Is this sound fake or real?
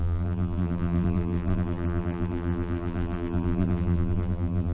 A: fake